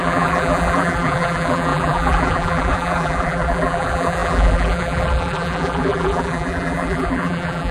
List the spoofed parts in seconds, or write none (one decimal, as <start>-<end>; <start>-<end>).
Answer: 0.0-7.7